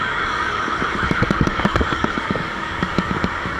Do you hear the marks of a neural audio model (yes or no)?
yes